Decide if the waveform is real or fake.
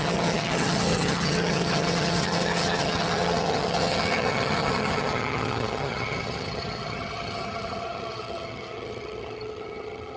fake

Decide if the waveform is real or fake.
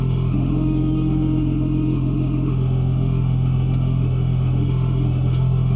fake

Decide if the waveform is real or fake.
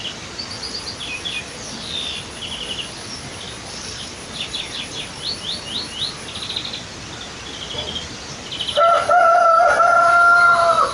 real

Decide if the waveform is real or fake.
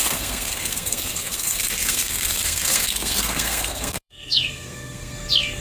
fake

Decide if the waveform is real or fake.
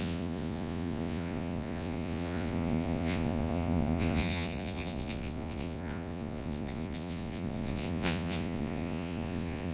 fake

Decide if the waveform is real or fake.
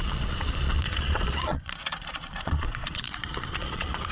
fake